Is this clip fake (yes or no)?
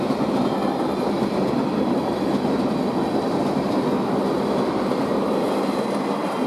no